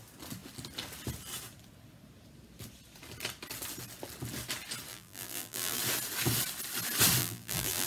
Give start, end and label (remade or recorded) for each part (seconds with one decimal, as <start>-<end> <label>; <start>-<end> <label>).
0.0-4.9 recorded; 4.9-5.8 remade; 5.8-7.2 recorded; 7.2-7.9 remade